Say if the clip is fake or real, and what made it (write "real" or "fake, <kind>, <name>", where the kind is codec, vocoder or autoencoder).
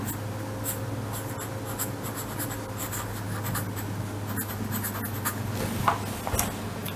real